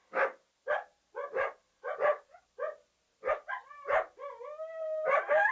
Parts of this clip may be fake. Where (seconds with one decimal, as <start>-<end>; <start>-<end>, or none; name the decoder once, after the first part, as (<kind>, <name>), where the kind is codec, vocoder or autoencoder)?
none